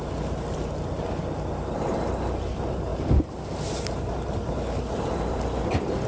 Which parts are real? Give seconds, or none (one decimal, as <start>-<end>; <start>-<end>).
0.0-6.1